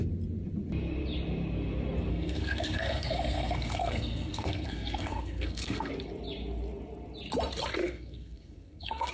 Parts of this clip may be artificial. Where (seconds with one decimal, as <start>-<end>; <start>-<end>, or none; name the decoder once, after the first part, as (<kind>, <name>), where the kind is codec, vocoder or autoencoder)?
2.1-5.9 (codec, SNAC); 7.8-9.1